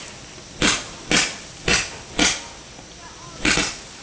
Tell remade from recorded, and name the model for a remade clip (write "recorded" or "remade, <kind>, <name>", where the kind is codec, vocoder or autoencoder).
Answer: recorded